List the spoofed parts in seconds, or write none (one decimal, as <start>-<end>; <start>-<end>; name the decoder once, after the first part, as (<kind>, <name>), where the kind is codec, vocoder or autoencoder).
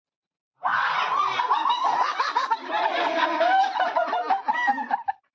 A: 3.0-3.6 (codec, SNAC)